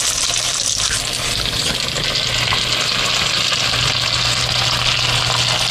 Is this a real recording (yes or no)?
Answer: yes